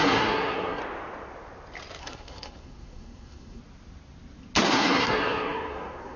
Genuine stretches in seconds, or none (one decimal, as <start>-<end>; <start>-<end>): 0.8-2.0; 3.6-4.6